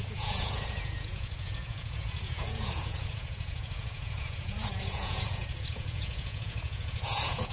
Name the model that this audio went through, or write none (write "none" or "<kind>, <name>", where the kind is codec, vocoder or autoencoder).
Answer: vocoder, Vocos